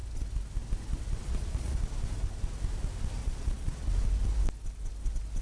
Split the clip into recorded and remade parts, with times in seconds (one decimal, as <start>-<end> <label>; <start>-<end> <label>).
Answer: 0.0-1.2 recorded; 1.2-1.8 remade; 1.8-3.2 recorded; 3.2-3.9 remade; 3.9-5.4 recorded